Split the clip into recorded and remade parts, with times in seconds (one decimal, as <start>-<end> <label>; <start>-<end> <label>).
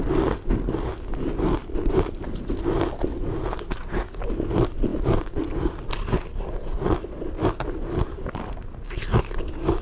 0.0-9.8 recorded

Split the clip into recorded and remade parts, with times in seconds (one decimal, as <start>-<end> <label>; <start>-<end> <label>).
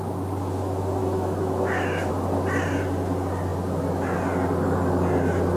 0.0-1.0 recorded; 1.0-2.1 remade; 2.1-5.6 recorded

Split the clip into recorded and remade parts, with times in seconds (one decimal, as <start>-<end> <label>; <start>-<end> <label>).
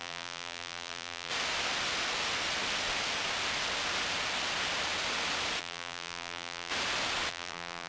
0.0-1.3 remade; 1.3-5.6 recorded; 5.6-6.7 remade; 6.7-7.3 recorded; 7.3-7.9 remade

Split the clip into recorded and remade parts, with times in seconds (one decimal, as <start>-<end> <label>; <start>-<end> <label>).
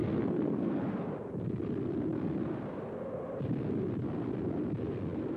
0.0-0.8 remade; 0.8-5.4 recorded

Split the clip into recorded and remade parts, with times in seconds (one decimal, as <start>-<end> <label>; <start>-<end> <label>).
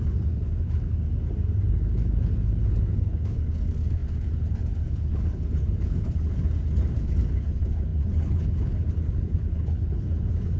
0.0-1.0 remade; 1.0-1.7 recorded; 1.7-6.4 remade; 6.4-7.0 recorded; 7.0-10.6 remade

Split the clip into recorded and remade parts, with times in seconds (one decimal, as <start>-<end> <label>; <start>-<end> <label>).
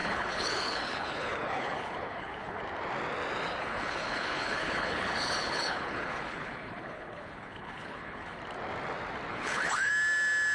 0.0-2.6 remade; 2.6-3.6 recorded; 3.6-8.4 remade; 8.4-9.3 recorded; 9.3-9.9 remade; 9.9-10.5 recorded